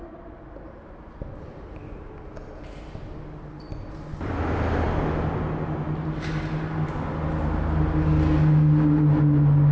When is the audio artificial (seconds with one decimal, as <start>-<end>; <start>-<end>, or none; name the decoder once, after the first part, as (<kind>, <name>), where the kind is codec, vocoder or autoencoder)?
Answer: none